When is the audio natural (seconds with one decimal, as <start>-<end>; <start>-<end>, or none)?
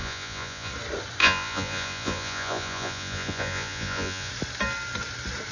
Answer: 0.7-1.2; 4.3-5.5